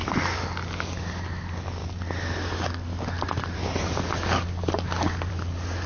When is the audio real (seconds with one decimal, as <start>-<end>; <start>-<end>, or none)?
0.0-5.9